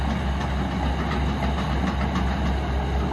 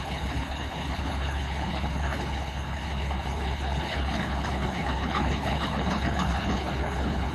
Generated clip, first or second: second